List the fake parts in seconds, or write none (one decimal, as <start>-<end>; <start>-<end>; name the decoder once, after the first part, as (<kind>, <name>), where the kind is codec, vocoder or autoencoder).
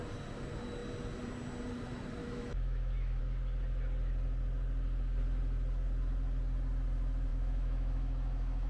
2.2-3.2 (autoencoder, DAC-VAE); 7.3-8.7